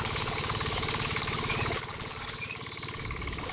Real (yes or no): no